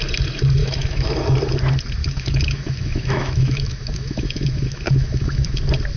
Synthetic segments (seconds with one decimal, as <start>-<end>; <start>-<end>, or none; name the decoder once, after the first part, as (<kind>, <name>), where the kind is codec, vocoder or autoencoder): 0.6-1.1 (autoencoder, DAC-VAE); 2.0-5.6